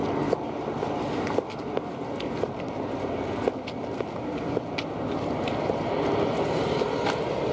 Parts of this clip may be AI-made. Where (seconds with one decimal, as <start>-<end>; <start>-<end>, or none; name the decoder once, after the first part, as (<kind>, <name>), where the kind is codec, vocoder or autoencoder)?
none